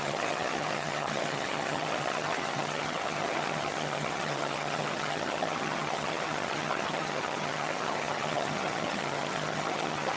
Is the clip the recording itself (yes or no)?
no